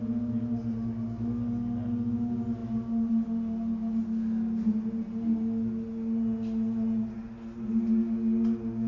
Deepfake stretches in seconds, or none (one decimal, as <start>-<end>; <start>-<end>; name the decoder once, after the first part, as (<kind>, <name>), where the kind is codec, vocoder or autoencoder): none